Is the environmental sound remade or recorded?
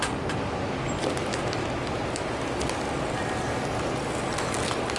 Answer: recorded